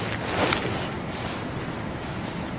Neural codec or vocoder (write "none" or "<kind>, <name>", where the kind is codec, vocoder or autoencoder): none